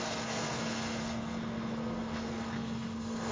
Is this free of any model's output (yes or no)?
no